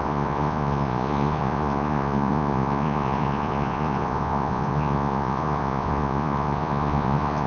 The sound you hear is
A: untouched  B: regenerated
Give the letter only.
B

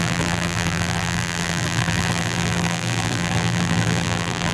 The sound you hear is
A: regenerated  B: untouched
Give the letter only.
A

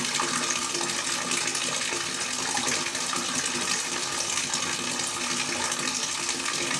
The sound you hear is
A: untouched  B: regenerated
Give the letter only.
A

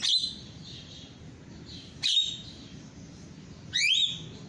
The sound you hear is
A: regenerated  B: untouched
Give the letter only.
B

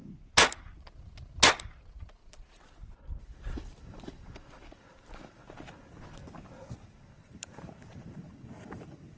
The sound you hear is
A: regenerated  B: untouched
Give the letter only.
B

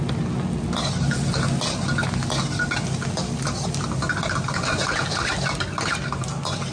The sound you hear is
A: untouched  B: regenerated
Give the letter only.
A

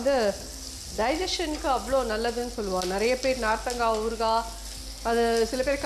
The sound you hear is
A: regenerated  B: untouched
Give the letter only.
B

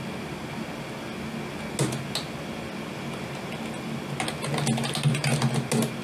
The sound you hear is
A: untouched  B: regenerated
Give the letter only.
A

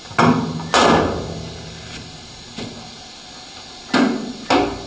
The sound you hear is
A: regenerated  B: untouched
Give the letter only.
B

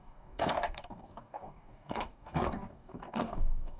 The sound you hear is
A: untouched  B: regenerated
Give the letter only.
B